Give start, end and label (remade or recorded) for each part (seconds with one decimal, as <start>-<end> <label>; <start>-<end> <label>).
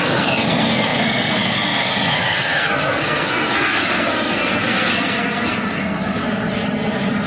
0.0-6.2 remade; 6.2-7.3 recorded